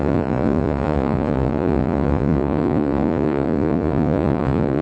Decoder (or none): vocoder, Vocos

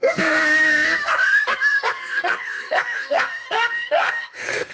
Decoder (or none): codec, SNAC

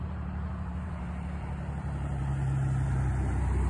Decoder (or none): vocoder, BigVGAN v2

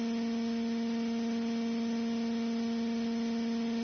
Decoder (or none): none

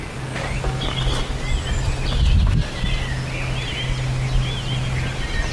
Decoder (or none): none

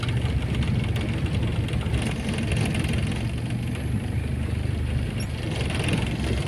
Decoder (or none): none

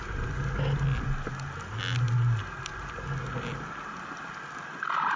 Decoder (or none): none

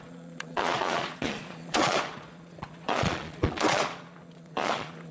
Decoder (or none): vocoder, Vocos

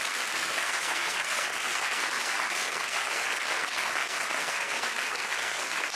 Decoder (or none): codec, SNAC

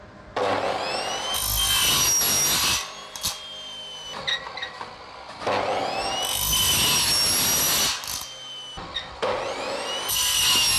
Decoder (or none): none